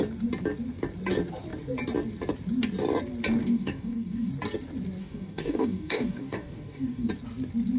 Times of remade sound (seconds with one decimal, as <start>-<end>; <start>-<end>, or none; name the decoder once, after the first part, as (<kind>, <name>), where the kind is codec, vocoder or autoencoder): 3.4-4.3 (codec, DAC); 5.0-7.1